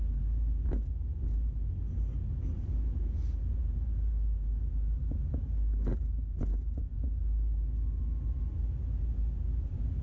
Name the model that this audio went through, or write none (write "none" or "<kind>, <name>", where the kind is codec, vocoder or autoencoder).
none